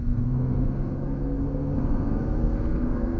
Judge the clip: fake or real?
fake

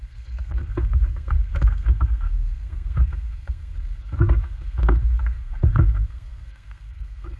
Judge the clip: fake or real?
fake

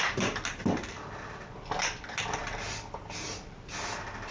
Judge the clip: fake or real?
real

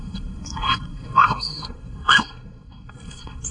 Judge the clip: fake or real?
fake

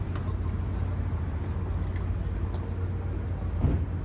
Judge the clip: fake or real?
real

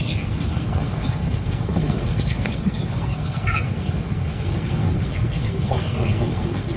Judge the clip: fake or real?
fake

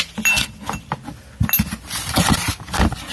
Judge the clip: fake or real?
real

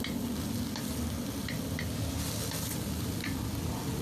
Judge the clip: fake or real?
real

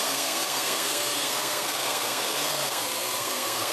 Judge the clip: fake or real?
fake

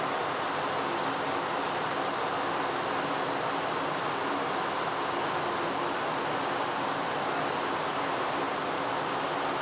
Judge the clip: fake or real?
real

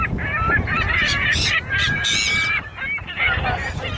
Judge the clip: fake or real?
real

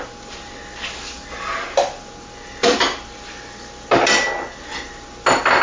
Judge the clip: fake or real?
real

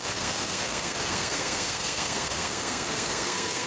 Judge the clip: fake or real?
fake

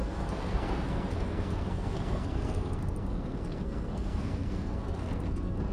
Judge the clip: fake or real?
fake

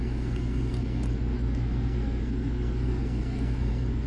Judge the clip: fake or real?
fake